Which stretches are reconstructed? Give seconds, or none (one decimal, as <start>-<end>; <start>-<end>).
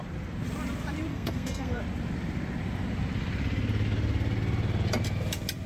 1.1-1.8